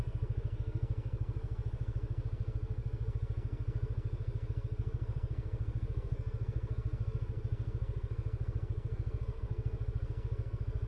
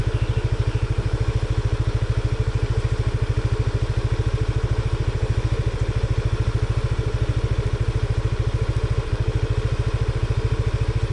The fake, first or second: first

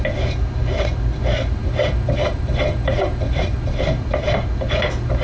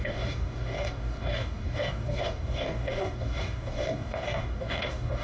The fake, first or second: second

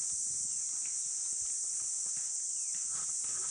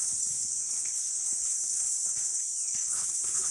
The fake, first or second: second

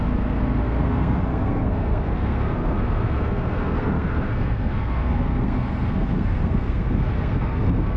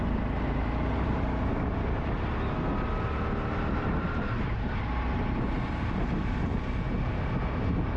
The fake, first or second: first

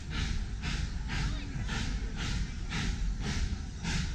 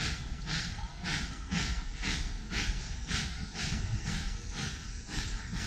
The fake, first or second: second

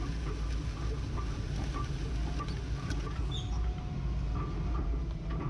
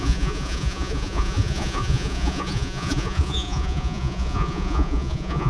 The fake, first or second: second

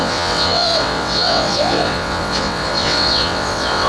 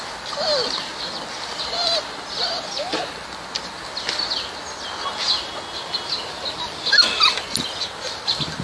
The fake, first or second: first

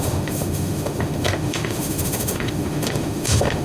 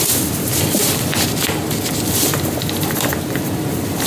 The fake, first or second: first